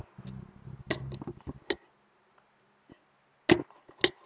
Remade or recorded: recorded